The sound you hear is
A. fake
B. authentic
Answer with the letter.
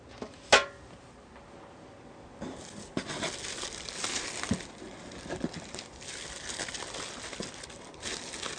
B